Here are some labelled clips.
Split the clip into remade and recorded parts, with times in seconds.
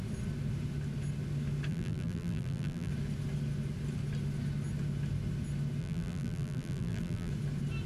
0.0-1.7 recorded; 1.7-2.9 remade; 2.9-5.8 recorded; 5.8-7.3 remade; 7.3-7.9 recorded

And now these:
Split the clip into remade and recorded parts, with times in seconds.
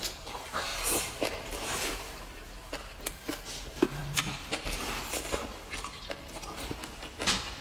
0.0-0.7 recorded; 0.7-3.1 remade; 3.1-4.0 recorded; 4.0-4.9 remade; 4.9-7.6 recorded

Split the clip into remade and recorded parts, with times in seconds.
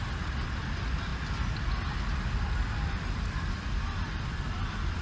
0.0-1.1 remade; 1.1-2.8 recorded; 2.8-5.0 remade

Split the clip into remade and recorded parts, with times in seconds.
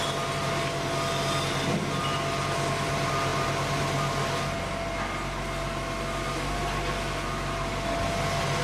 0.0-8.6 recorded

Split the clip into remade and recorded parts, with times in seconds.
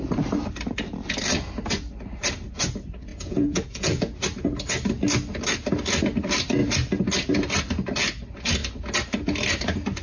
0.0-3.1 recorded; 3.1-4.2 remade; 4.2-10.0 recorded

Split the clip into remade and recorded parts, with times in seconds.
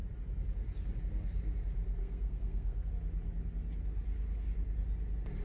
0.0-2.0 recorded; 2.0-2.9 remade; 2.9-5.4 recorded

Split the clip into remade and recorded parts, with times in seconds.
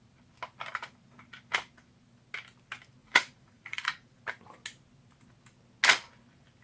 0.0-3.0 recorded; 3.0-4.2 remade; 4.2-6.6 recorded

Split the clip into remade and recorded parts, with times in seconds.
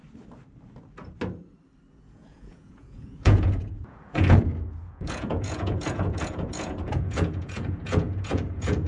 0.0-1.9 recorded; 1.9-8.9 remade